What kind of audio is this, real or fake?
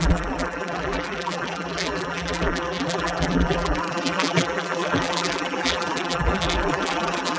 fake